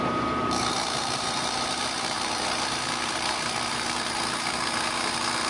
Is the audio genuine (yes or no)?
no